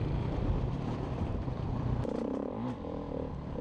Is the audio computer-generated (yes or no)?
yes